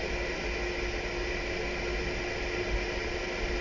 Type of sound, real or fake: real